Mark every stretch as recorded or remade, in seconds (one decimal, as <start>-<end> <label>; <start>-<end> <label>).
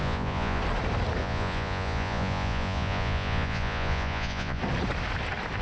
0.0-0.6 remade; 0.6-1.2 recorded; 1.2-4.6 remade; 4.6-5.6 recorded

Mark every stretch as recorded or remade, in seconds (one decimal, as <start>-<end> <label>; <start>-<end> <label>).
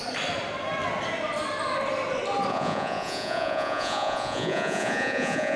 0.0-2.5 recorded; 2.5-5.6 remade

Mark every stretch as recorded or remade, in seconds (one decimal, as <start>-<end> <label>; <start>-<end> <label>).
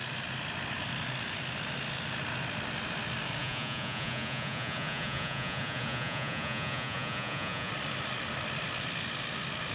0.0-3.4 recorded; 3.4-7.7 remade; 7.7-9.7 recorded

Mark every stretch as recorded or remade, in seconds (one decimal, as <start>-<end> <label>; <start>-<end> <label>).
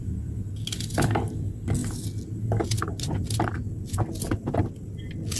0.0-5.4 recorded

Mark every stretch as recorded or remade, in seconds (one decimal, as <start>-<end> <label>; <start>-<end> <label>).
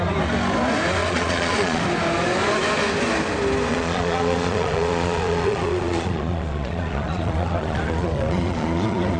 0.0-1.0 recorded; 1.0-1.8 remade; 1.8-3.7 recorded; 3.7-9.2 remade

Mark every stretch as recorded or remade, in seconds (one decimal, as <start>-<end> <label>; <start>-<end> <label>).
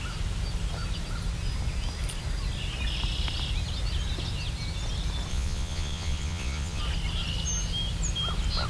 0.0-5.3 recorded; 5.3-6.8 remade; 6.8-8.7 recorded